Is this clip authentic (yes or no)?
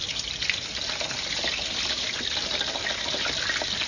yes